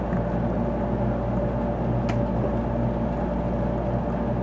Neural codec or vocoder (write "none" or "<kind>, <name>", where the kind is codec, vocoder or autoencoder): none